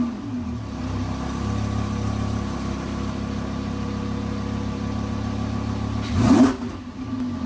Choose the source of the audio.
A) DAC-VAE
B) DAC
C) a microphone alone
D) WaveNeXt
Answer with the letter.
C